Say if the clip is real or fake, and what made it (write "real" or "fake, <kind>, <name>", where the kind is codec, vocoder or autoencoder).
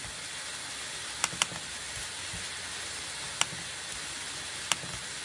real